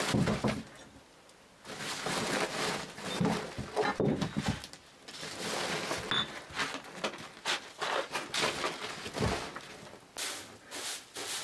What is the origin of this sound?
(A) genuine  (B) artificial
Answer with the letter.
A